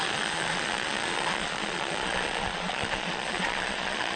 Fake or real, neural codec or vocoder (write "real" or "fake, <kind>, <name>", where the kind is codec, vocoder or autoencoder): fake, vocoder, Vocos